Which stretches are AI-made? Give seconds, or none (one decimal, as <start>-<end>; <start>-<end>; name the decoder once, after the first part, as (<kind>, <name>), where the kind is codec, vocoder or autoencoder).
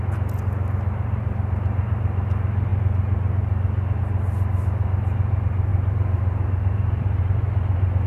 5.7-7.2 (vocoder, BigVGAN v2)